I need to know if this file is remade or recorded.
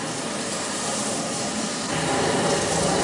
recorded